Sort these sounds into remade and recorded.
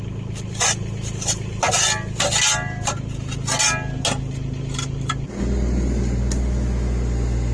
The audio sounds recorded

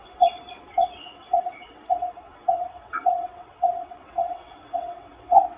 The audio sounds remade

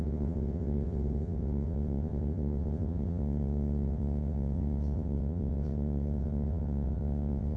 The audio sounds remade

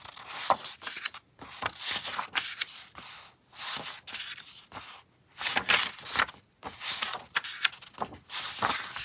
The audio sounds recorded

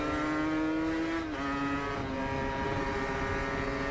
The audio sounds recorded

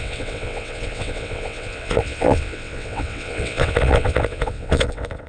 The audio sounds remade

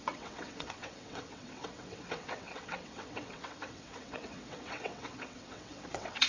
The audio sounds remade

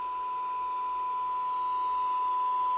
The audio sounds recorded